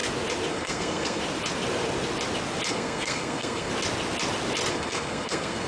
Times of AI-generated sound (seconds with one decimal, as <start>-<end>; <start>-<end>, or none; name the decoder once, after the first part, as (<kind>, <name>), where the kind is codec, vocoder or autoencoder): 0.5-1.2 (codec, SNAC); 2.7-3.7; 4.7-5.7